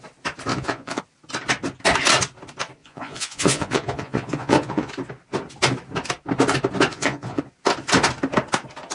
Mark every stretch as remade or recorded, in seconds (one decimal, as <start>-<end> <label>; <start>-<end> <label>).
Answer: 0.0-0.5 recorded; 0.5-1.0 remade; 1.0-2.8 recorded; 2.8-4.9 remade; 4.9-6.9 recorded; 6.9-7.4 remade; 7.4-8.9 recorded